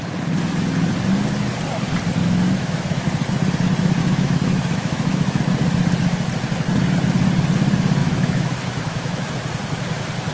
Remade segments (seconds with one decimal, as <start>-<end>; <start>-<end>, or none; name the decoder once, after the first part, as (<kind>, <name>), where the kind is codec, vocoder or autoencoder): 2.2-3.0 (autoencoder, DAC-VAE); 4.0-5.4; 8.0-9.3